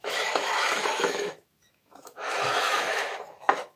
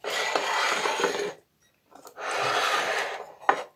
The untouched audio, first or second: second